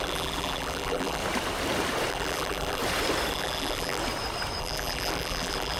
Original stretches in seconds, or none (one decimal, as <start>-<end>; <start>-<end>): 1.2-2.1; 2.8-3.3; 4.0-4.6